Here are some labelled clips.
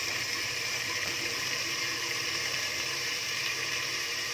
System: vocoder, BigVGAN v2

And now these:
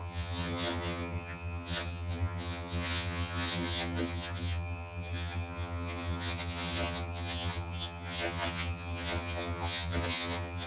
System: vocoder, HiFi-GAN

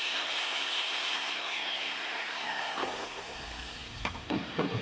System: codec, SNAC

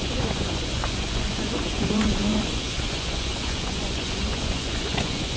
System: vocoder, Vocos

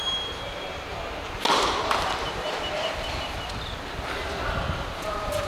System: none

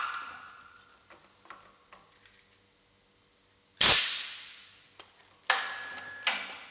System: none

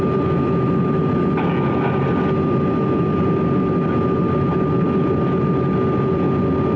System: none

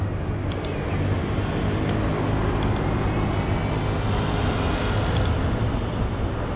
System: none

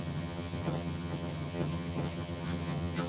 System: vocoder, HiFi-GAN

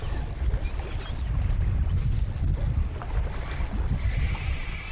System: none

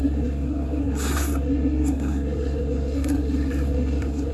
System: codec, SNAC